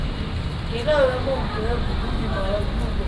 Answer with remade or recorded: recorded